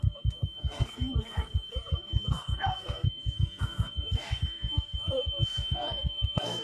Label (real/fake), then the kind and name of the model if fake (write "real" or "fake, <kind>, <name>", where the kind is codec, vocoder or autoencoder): fake, codec, SNAC